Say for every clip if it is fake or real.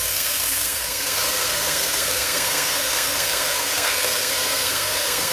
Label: fake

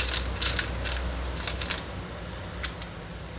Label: real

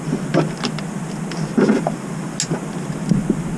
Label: real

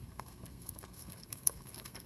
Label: fake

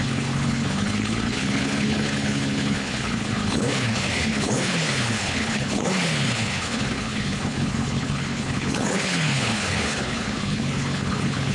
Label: fake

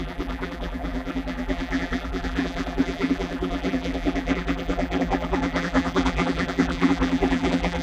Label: fake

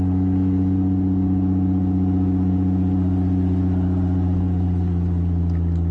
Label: real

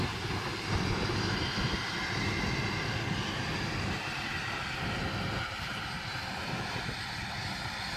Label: real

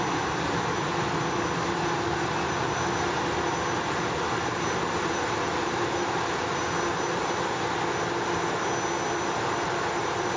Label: real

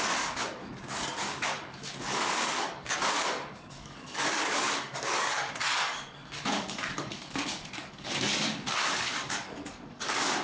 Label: fake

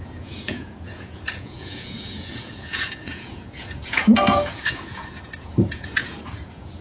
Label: fake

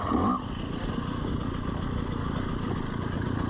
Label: real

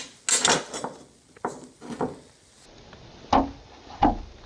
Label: real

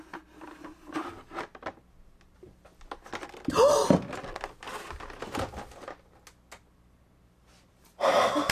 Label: real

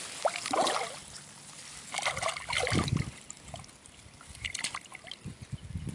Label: real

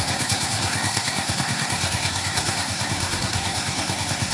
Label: fake